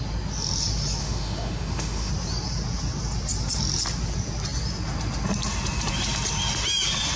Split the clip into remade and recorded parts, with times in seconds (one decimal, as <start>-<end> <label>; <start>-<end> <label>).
0.0-1.0 recorded; 1.0-2.1 remade; 2.1-7.2 recorded